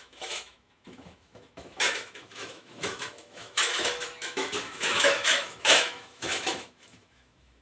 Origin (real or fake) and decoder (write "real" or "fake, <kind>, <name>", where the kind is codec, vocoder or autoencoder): fake, autoencoder, DAC-VAE